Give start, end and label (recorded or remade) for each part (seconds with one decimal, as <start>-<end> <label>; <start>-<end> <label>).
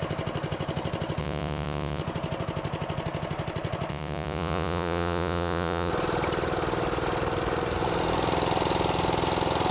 0.0-1.2 recorded; 1.2-2.0 remade; 2.0-3.9 recorded; 3.9-5.9 remade; 5.9-9.7 recorded